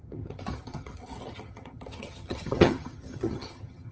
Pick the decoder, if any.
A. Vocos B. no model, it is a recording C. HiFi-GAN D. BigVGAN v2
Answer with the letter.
C